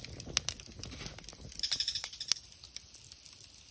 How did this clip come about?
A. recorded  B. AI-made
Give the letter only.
A